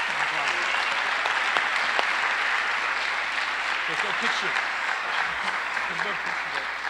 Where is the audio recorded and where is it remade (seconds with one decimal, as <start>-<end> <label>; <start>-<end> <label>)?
0.0-4.7 recorded; 4.7-5.9 remade; 5.9-6.9 recorded